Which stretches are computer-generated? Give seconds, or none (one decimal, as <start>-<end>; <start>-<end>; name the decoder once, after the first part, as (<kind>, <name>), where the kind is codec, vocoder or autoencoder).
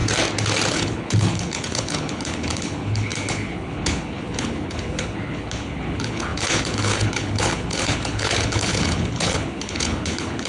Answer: 0.7-10.5 (codec, HILCodec)